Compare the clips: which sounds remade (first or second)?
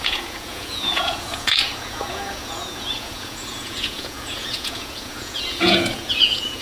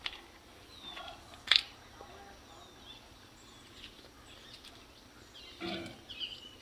first